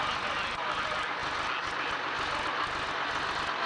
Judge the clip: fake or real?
real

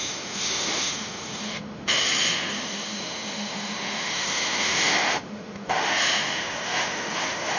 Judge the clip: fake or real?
fake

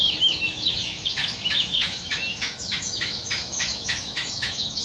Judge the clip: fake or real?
fake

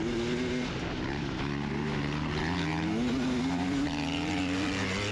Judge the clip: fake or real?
real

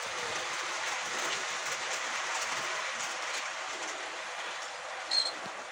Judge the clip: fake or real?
real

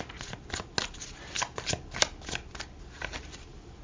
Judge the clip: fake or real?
real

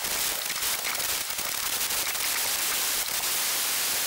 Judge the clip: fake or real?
real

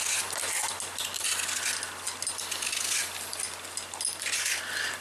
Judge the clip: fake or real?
real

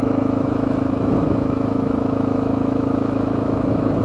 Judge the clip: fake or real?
fake